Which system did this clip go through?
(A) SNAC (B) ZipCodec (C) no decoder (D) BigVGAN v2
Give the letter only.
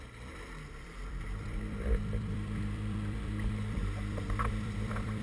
D